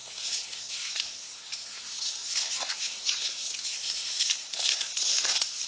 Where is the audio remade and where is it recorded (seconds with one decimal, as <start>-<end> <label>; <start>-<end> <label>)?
0.0-5.7 remade